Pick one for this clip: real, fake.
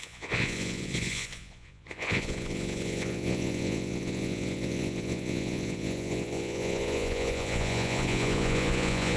fake